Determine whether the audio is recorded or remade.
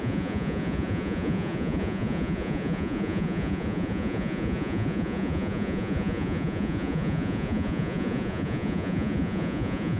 remade